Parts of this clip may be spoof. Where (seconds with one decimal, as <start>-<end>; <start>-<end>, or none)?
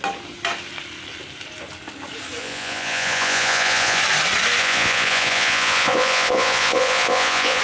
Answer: 2.4-4.0; 4.6-7.6